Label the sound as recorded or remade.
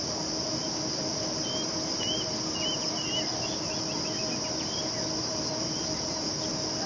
recorded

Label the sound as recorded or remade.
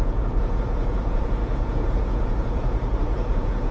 remade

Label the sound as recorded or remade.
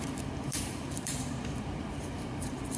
remade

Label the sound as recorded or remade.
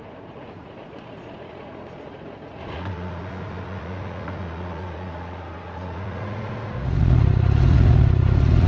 remade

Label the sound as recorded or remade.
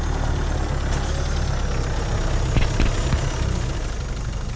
recorded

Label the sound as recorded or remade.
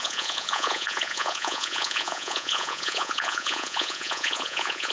remade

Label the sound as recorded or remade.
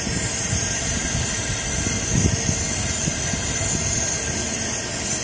recorded